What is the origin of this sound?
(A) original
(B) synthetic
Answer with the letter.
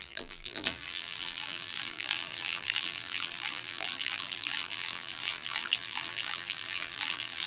B